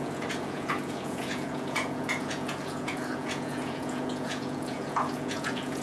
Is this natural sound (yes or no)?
no